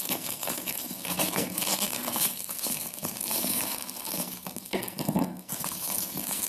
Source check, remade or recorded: remade